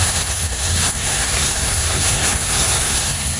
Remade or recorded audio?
remade